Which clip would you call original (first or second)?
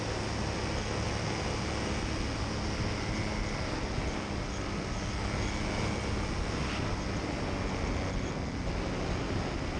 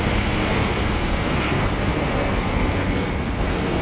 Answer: first